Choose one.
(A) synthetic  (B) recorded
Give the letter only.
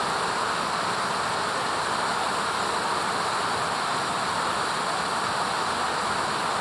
B